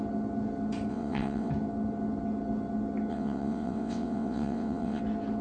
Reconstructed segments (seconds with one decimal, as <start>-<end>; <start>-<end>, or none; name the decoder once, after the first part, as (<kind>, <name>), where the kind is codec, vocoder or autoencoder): 0.9-1.5 (vocoder, WaveNeXt); 3.1-5.0